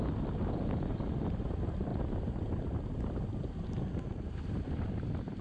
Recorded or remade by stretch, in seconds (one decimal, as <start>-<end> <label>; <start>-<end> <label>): 0.0-5.4 recorded